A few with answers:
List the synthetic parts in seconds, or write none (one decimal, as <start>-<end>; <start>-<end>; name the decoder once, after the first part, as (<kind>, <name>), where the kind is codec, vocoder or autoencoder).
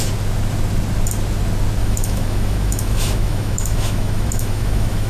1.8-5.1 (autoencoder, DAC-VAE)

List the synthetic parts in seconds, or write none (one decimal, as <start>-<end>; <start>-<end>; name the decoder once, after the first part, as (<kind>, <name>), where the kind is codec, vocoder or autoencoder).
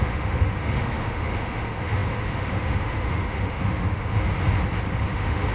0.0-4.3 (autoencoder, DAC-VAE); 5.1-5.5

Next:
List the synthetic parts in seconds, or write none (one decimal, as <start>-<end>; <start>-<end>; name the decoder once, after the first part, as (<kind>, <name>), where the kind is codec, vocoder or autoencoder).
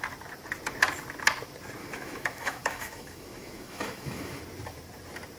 1.8-4.4 (autoencoder, DAC-VAE)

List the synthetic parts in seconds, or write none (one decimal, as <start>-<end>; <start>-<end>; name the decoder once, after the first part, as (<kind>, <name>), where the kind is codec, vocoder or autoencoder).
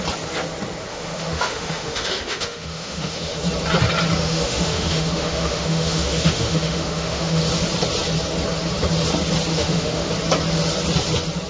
0.9-3.4 (autoencoder, DAC-VAE); 4.2-7.4; 9.5-10.1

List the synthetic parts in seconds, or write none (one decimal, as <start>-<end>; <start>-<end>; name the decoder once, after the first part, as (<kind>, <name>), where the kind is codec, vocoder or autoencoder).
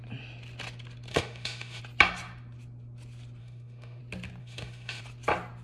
1.1-1.8 (autoencoder, DAC-VAE); 3.4-4.0; 4.4-5.0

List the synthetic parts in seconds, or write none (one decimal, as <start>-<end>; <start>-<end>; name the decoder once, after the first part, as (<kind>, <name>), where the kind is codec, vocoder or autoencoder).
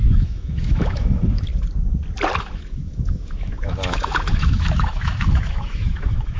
0.0-1.5 (autoencoder, DAC-VAE); 2.4-6.4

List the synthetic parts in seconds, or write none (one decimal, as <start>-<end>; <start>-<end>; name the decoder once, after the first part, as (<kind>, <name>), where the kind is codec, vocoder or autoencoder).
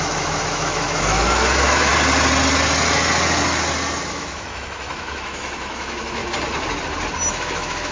0.0-1.9 (autoencoder, DAC-VAE); 4.1-6.2; 7.3-7.9